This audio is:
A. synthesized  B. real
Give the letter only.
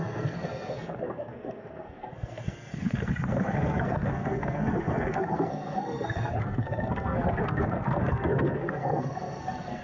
A